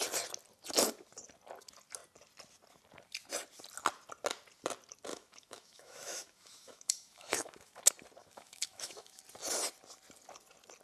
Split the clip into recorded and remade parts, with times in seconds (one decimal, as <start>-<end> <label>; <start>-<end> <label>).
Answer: 0.0-5.1 recorded; 5.1-7.8 remade; 7.8-8.2 recorded; 8.2-9.2 remade; 9.2-10.8 recorded